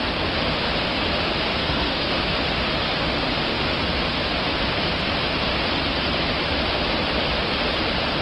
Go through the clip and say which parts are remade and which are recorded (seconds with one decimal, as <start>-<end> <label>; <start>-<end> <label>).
0.0-1.5 recorded; 1.5-2.1 remade; 2.1-8.2 recorded